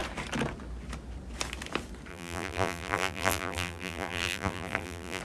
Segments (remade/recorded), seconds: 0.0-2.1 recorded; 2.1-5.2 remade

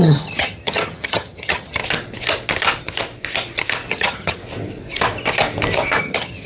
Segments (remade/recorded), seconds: 0.0-1.8 remade; 1.8-3.9 recorded; 3.9-4.4 remade; 4.4-6.0 recorded; 6.0-6.5 remade

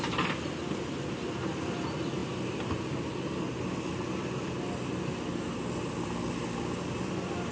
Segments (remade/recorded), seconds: 0.0-7.5 recorded

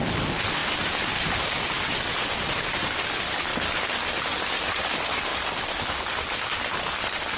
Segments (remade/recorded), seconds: 0.0-3.5 remade; 3.5-4.8 recorded; 4.8-5.3 remade; 5.3-6.7 recorded; 6.7-7.4 remade